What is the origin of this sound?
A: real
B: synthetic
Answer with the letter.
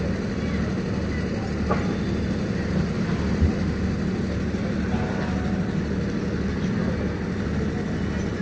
A